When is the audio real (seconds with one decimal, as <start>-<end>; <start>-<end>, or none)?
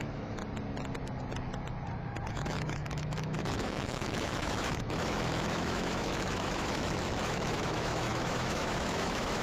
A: 0.4-2.3